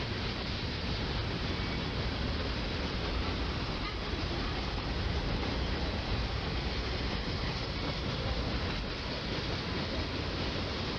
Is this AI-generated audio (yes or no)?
no